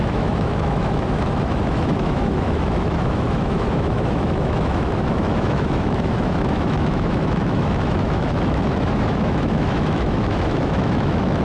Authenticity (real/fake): fake